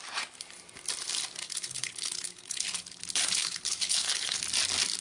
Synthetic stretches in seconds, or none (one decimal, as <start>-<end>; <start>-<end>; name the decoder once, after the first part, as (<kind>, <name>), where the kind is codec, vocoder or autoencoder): 1.4-4.4 (codec, HILCodec)